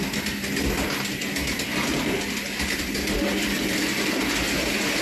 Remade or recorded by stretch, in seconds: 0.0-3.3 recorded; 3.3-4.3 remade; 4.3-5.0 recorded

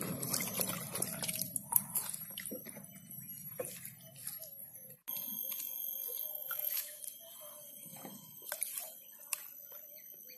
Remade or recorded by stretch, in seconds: 0.0-6.3 recorded; 6.3-7.0 remade; 7.0-10.4 recorded